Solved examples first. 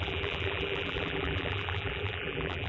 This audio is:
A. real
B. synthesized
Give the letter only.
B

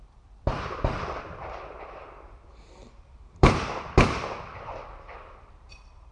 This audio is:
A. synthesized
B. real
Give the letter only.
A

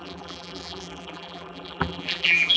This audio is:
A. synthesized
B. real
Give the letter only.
A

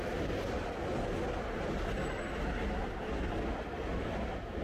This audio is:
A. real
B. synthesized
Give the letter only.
A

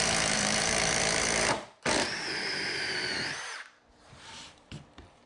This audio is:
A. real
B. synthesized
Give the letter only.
B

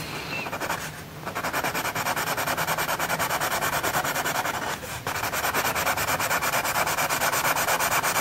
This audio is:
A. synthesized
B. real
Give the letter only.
B